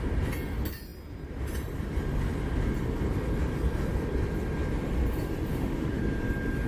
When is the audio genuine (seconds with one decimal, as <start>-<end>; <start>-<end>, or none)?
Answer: 0.0-5.5; 6.0-6.7